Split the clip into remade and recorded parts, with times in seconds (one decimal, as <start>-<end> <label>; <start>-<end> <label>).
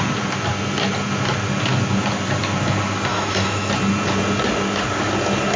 0.0-3.1 recorded; 3.1-3.7 remade; 3.7-5.6 recorded